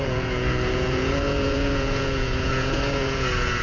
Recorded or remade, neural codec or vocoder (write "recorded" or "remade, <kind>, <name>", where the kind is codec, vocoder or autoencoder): remade, vocoder, Vocos